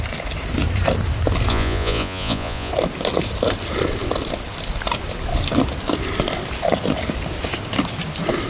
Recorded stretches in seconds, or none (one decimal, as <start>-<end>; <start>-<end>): 0.0-1.5; 2.7-8.5